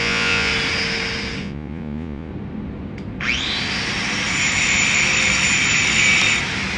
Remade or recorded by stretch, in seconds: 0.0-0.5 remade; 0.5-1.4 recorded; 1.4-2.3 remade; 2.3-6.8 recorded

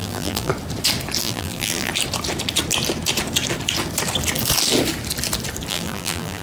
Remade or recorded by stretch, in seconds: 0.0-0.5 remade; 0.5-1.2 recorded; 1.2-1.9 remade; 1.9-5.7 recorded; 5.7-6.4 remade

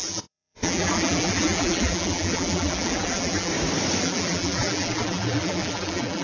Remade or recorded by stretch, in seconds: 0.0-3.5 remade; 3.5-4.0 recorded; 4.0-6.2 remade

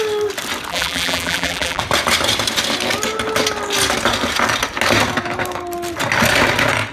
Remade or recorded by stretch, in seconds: 0.0-0.7 recorded; 0.7-1.8 remade; 1.8-6.9 recorded